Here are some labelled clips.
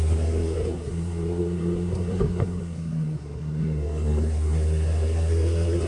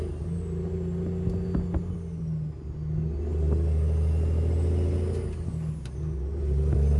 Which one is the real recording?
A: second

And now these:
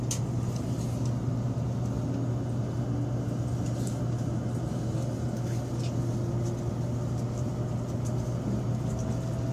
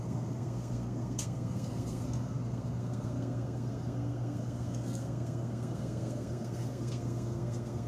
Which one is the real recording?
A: first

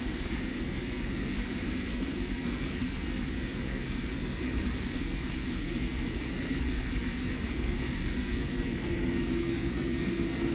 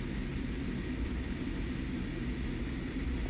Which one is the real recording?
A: second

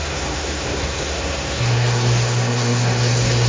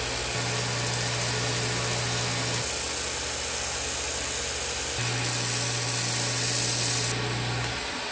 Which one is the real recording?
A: second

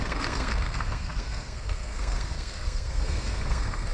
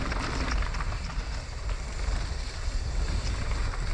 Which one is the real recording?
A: second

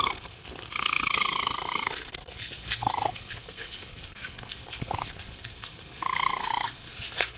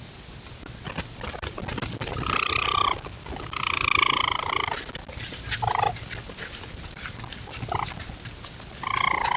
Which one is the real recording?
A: second